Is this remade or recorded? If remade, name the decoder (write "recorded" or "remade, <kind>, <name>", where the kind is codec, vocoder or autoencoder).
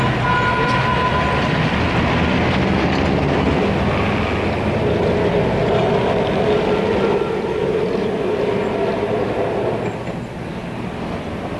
recorded